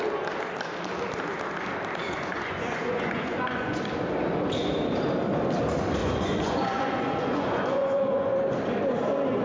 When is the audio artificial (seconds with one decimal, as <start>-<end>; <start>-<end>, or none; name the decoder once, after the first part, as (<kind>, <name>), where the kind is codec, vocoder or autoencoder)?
2.0-3.8 (vocoder, Vocos); 6.0-8.4